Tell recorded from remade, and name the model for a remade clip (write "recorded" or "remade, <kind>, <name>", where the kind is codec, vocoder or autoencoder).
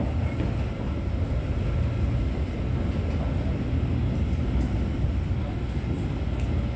recorded